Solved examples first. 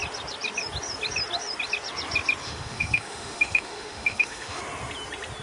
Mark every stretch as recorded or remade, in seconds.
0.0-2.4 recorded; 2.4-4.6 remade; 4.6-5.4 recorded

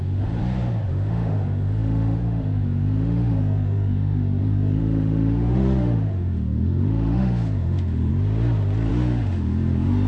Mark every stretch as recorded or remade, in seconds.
0.0-0.4 remade; 0.4-0.9 recorded; 0.9-8.1 remade; 8.1-8.9 recorded; 8.9-10.1 remade

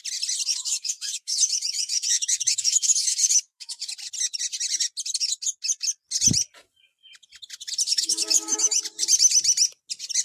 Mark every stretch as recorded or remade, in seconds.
0.0-0.5 recorded; 0.5-3.9 remade; 3.9-7.9 recorded; 7.9-8.8 remade; 8.8-10.2 recorded

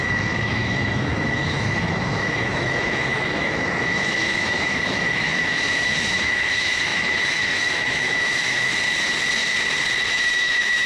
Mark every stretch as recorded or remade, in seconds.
0.0-8.7 remade; 8.7-10.1 recorded; 10.1-10.9 remade

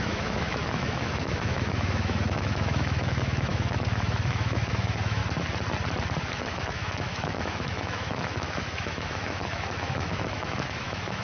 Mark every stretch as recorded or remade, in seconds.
0.0-5.2 remade; 5.2-6.3 recorded; 6.3-11.2 remade

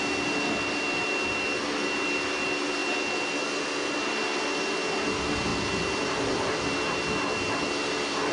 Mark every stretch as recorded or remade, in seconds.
0.0-8.3 recorded

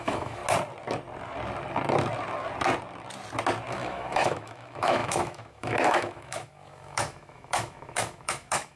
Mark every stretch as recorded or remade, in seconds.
0.0-0.4 remade; 0.4-3.7 recorded; 3.7-8.8 remade

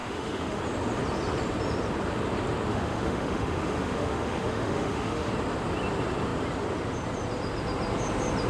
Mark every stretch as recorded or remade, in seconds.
0.0-0.6 remade; 0.6-2.7 recorded; 2.7-5.3 remade; 5.3-8.5 recorded